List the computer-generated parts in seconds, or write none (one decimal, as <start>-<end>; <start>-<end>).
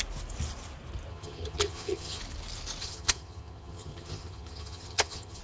1.1-2.2; 2.8-5.4